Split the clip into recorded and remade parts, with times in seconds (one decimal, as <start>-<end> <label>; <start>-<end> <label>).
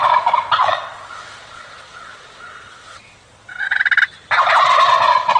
0.0-0.6 recorded; 0.6-3.8 remade; 3.8-5.4 recorded